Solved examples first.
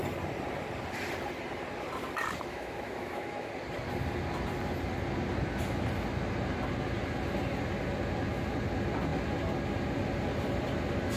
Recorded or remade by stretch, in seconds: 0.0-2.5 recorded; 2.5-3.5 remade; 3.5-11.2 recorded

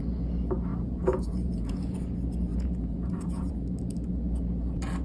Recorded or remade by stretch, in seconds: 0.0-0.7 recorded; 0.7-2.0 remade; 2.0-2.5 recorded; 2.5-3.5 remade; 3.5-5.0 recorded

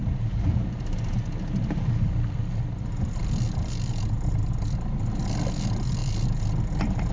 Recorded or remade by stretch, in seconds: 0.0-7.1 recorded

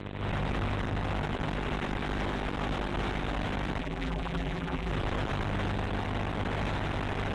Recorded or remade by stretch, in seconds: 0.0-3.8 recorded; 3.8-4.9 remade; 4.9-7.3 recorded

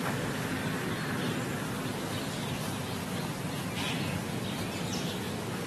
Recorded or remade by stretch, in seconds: 0.0-0.6 remade; 0.6-2.2 recorded; 2.2-2.6 remade; 2.6-5.0 recorded; 5.0-5.7 remade

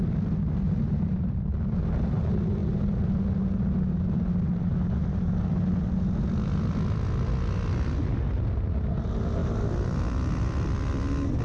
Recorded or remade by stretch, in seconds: 0.0-11.4 recorded

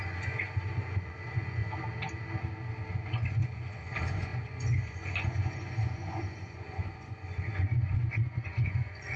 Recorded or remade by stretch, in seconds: 0.0-1.6 remade; 1.6-2.9 recorded; 2.9-9.2 remade

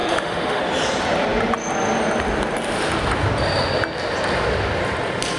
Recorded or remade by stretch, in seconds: 0.0-0.6 remade; 0.6-5.4 recorded